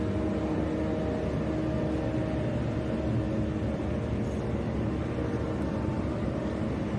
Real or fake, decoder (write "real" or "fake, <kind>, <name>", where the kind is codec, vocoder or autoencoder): real